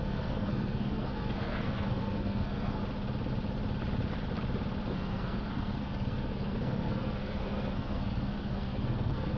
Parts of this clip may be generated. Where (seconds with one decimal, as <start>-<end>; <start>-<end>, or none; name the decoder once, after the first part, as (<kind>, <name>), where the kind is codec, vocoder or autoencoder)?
0.0-2.8 (codec, SNAC); 4.9-9.4